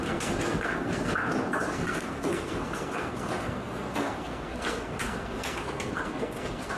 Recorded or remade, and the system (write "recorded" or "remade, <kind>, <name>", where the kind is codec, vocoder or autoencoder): remade, codec, SNAC